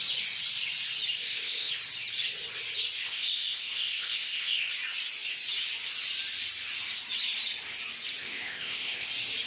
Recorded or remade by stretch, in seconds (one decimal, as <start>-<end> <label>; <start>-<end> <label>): 0.0-1.2 recorded; 1.2-1.7 remade; 1.7-3.0 recorded; 3.0-4.7 remade; 4.7-8.2 recorded; 8.2-9.1 remade; 9.1-9.5 recorded